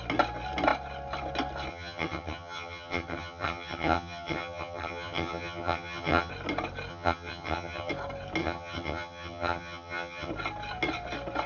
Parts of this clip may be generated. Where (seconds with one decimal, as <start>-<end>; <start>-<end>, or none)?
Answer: 1.7-6.3; 6.9-7.9; 8.4-10.3